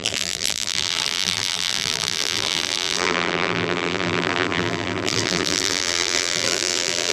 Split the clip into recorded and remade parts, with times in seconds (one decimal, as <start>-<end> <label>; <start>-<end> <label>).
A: 0.0-7.1 remade